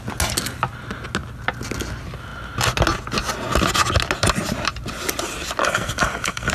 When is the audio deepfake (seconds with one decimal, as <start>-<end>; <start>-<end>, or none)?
5.6-6.5